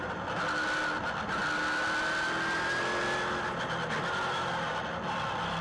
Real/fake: real